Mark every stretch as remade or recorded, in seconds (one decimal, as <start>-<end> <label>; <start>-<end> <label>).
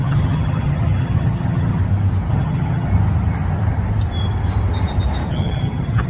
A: 0.0-1.8 remade; 1.8-2.3 recorded; 2.3-2.9 remade; 2.9-5.3 recorded; 5.3-6.1 remade